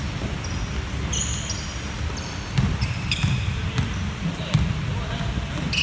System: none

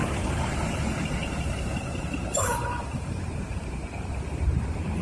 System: vocoder, BigVGAN v2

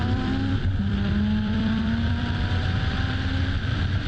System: vocoder, BigVGAN v2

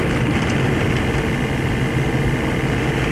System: none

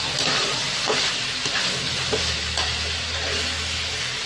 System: none